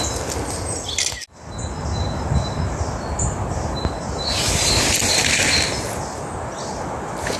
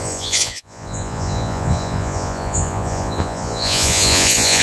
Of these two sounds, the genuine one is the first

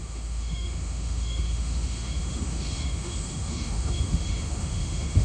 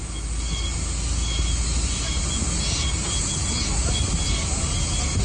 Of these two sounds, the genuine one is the second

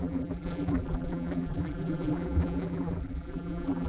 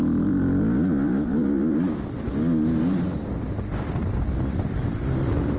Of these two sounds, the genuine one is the second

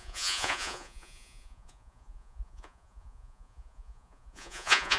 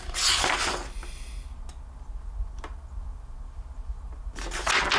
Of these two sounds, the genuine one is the second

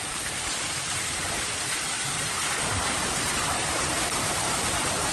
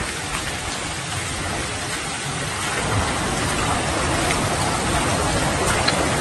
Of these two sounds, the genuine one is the second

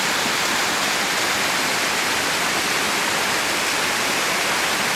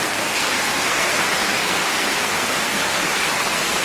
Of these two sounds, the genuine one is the first